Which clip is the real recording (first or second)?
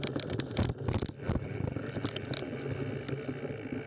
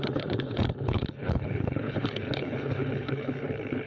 first